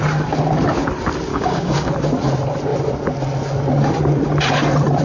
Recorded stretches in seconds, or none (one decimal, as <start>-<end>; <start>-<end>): 0.0-1.3; 1.9-5.0